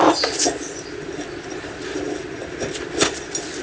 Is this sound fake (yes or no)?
no